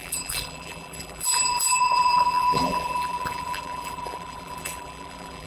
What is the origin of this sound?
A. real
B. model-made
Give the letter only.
B